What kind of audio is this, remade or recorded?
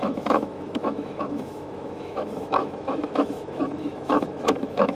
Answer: remade